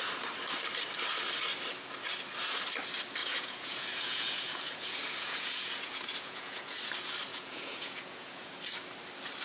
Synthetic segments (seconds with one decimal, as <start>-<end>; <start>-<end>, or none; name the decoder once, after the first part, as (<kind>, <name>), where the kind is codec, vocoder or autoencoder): 3.2-6.8 (vocoder, Vocos); 7.3-8.6